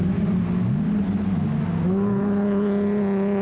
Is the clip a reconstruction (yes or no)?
no